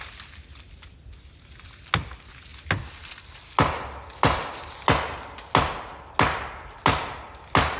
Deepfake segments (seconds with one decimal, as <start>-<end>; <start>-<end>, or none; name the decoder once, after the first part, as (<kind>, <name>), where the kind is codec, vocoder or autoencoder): none